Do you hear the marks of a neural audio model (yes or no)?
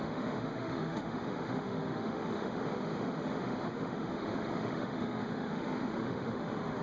yes